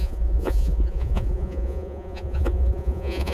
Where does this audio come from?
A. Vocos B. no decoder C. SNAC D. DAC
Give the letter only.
A